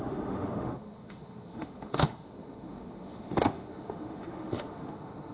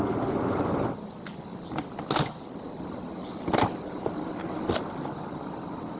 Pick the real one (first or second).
second